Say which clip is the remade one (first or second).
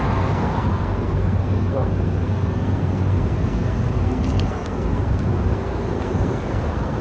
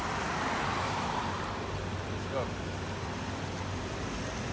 first